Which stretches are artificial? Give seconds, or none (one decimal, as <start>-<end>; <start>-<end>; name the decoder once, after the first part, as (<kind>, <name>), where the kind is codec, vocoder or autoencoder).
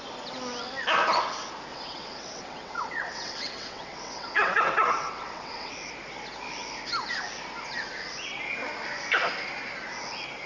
1.7-5.7 (vocoder, WaveNeXt)